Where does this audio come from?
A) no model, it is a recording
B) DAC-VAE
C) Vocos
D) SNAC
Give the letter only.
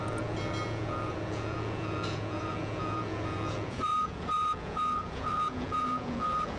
C